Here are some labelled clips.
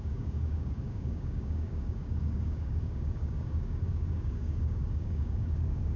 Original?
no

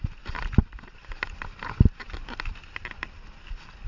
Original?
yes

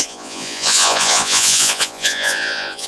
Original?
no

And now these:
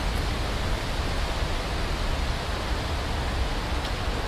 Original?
yes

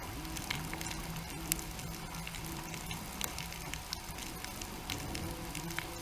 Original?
yes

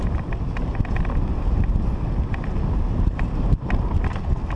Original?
yes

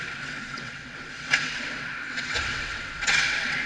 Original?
no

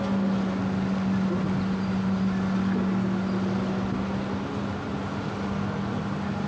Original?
yes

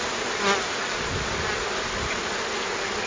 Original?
yes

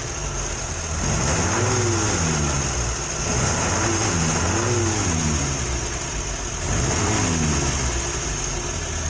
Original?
yes